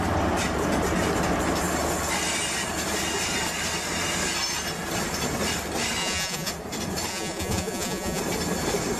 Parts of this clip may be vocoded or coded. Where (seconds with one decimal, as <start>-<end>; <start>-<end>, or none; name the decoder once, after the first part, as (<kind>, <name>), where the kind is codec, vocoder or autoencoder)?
6.0-6.5 (vocoder, Vocos); 7.1-8.2